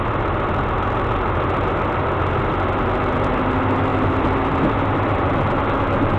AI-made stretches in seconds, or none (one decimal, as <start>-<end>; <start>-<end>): none